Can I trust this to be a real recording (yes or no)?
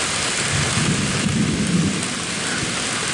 yes